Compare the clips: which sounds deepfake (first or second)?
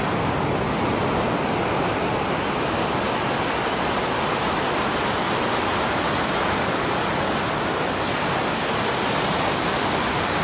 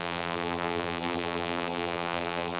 second